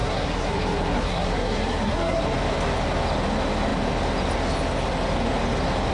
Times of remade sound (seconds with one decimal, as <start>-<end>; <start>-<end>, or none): 0.0-2.2